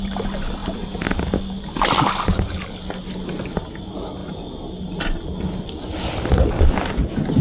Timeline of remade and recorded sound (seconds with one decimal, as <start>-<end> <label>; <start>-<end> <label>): 0.0-7.4 recorded